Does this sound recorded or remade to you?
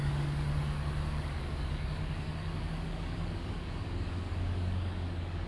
remade